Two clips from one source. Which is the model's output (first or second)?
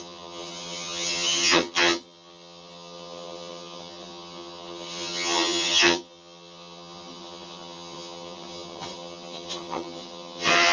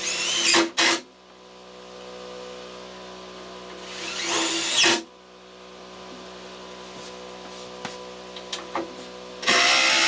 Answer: first